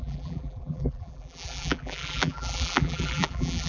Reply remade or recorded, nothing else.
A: remade